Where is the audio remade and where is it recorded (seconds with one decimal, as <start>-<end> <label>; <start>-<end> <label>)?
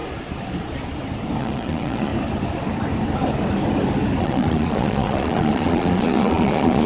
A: 0.0-1.4 recorded; 1.4-2.1 remade; 2.1-4.2 recorded; 4.2-6.9 remade